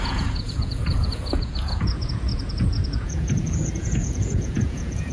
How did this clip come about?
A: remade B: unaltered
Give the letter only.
A